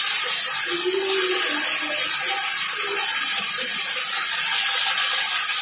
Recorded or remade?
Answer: recorded